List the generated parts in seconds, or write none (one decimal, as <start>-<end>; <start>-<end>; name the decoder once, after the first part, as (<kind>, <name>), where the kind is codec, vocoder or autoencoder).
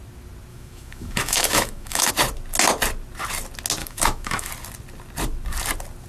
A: 0.5-2.1 (autoencoder, DAC-VAE); 3.8-4.5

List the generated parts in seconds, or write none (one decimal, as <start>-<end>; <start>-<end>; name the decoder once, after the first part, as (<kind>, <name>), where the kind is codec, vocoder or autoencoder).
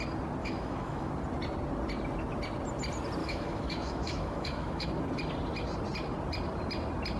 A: 0.4-1.1 (autoencoder, DAC-VAE); 3.2-4.9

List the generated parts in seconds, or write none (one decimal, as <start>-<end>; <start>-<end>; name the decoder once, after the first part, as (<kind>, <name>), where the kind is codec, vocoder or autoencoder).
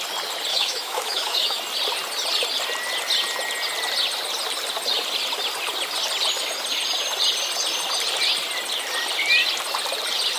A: 0.5-1.6 (autoencoder, DAC-VAE)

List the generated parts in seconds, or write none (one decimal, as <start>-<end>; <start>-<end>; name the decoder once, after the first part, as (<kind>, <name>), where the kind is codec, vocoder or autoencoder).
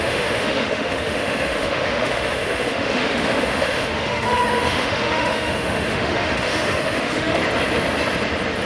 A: 0.0-7.4 (autoencoder, DAC-VAE)